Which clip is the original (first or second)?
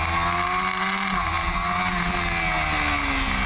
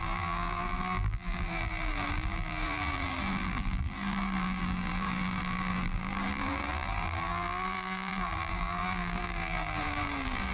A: first